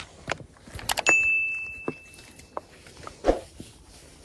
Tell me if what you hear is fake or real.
real